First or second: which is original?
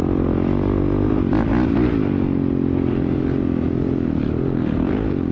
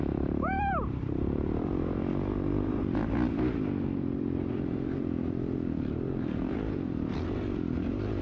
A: first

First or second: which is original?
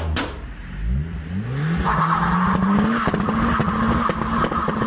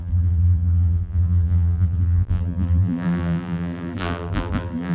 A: first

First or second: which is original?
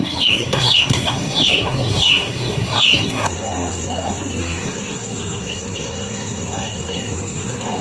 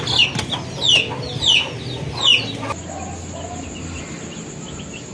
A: second